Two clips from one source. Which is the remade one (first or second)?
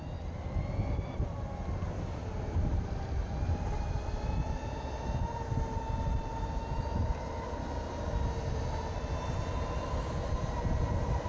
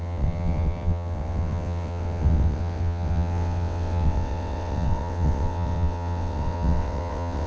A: second